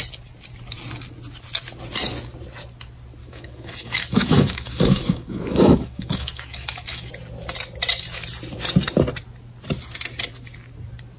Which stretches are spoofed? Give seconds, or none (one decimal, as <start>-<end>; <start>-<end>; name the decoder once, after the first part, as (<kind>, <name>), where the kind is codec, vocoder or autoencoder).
3.2-7.1 (autoencoder, DAC-VAE)